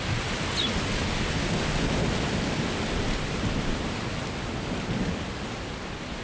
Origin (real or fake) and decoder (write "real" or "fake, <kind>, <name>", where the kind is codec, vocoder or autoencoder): real